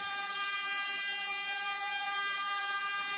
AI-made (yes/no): yes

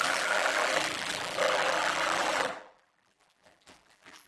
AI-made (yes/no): yes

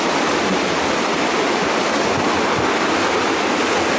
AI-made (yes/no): no